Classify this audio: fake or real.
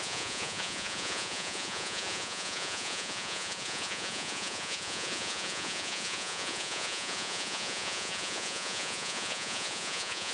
fake